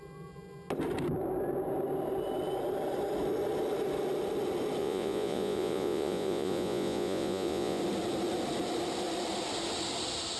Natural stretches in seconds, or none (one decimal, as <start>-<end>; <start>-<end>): 0.0-4.8; 7.8-10.4